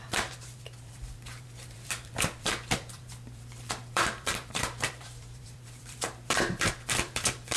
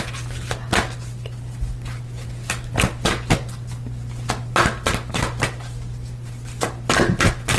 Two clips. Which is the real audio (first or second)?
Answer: second